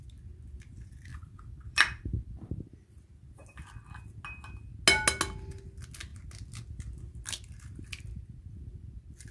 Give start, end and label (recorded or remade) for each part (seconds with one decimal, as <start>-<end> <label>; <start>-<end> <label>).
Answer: 0.0-1.1 recorded; 1.1-2.7 remade; 2.7-9.3 recorded